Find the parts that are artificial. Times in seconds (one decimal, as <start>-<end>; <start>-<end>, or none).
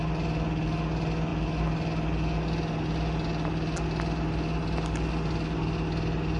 none